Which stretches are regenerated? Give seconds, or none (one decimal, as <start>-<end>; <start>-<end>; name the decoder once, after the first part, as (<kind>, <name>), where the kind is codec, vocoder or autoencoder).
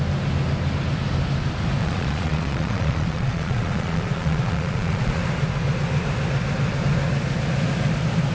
1.8-5.2 (vocoder, Vocos)